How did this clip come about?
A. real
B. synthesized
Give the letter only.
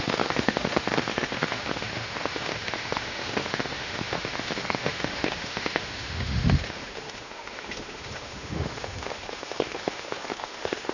B